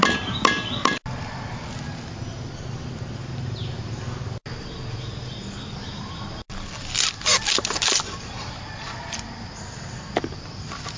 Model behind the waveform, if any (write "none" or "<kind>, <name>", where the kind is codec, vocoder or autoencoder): none